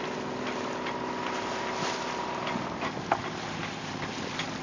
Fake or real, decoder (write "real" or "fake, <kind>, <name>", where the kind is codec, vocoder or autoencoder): real